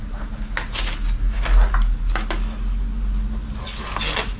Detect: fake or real real